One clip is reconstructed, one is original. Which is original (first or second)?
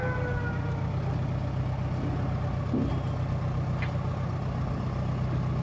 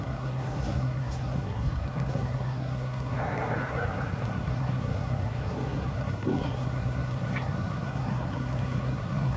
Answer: first